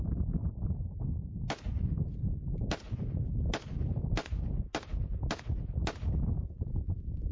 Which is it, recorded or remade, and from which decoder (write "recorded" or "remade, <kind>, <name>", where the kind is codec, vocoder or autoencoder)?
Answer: recorded